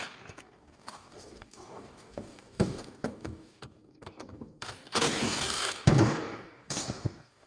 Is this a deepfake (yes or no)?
yes